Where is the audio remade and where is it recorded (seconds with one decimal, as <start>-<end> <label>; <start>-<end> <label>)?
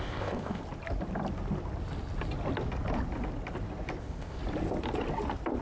0.0-0.6 remade; 0.6-4.0 recorded; 4.0-4.4 remade; 4.4-5.6 recorded